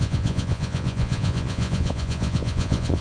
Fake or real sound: fake